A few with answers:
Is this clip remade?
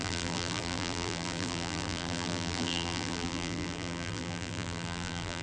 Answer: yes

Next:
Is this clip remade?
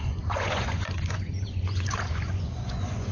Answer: yes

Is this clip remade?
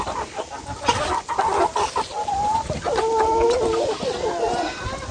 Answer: no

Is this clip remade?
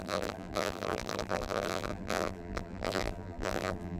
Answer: yes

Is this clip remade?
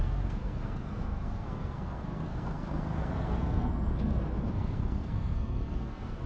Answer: yes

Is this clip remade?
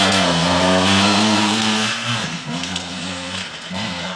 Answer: yes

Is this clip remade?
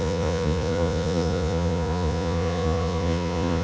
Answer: yes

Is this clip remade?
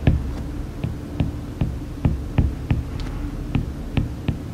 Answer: no